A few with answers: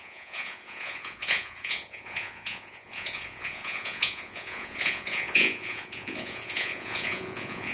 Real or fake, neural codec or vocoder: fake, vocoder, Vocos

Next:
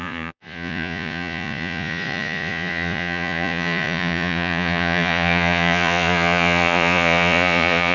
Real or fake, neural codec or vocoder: fake, vocoder, Vocos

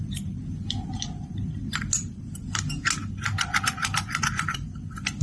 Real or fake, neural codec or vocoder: real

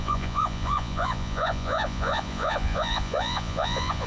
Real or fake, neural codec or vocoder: fake, vocoder, Vocos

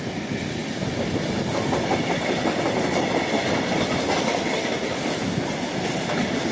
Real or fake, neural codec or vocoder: real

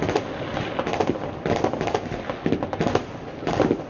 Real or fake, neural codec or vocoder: real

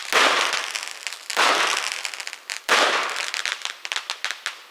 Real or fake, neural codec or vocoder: real